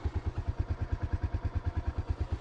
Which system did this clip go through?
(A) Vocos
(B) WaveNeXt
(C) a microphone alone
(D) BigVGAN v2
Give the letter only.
A